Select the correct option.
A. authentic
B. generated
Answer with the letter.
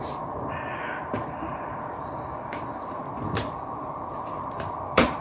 B